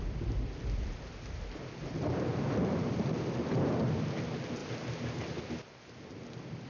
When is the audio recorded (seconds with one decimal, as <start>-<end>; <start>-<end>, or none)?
0.0-6.7